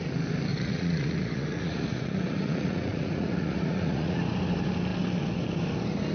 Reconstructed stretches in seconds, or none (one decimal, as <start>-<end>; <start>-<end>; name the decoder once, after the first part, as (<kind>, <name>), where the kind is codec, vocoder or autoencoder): 0.5-4.2 (vocoder, Vocos)